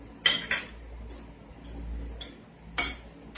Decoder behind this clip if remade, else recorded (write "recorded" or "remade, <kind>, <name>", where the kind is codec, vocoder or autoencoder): recorded